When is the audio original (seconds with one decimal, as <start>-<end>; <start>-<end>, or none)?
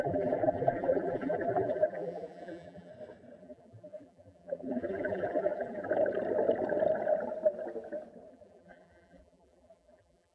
2.9-3.4; 5.9-8.3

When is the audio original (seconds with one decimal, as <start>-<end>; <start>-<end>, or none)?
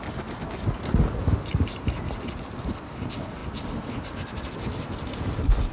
0.0-1.5; 2.3-5.7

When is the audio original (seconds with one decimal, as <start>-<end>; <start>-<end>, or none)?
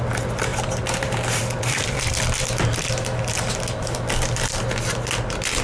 0.0-0.5; 2.1-5.6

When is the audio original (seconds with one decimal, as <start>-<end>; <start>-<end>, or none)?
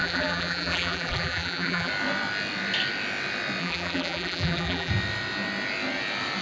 1.9-3.6; 4.9-6.4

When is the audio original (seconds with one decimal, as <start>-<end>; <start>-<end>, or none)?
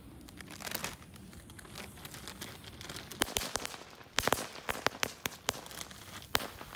0.0-6.8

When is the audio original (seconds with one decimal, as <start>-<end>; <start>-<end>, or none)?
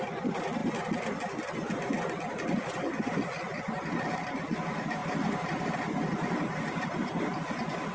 5.0-5.7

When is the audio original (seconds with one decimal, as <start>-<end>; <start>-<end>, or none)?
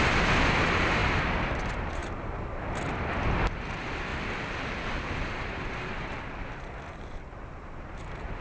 4.1-5.0; 6.1-6.9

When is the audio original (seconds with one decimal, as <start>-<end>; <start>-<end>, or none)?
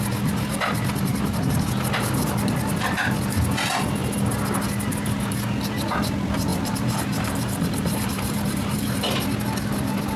0.0-6.5; 9.1-10.2